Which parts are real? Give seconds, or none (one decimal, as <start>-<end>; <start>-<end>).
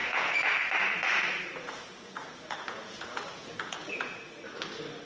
0.5-1.5; 4.6-5.1